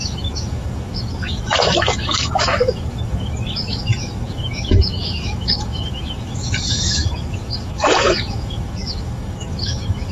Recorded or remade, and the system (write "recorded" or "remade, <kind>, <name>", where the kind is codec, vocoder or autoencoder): remade, autoencoder, DAC-VAE